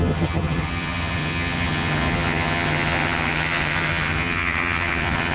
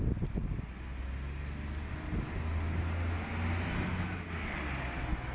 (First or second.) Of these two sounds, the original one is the second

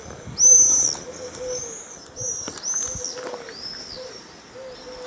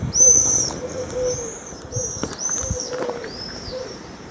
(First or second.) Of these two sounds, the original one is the first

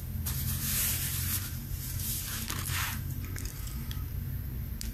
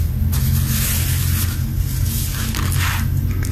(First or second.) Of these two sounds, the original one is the second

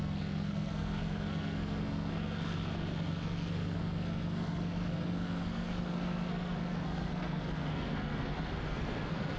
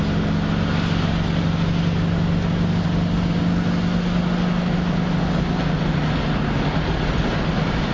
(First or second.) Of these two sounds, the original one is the second